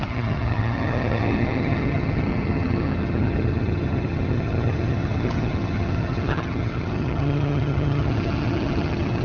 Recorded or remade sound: remade